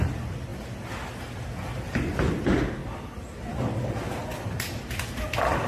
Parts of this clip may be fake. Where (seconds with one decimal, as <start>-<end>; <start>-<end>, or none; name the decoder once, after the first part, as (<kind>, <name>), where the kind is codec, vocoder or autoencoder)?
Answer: none